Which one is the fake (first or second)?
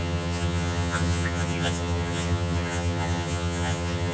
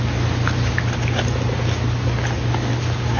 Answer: first